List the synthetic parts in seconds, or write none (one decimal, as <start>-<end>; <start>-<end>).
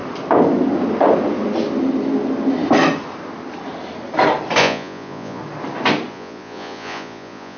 4.6-5.4; 6.1-7.6